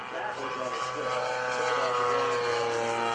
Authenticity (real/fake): real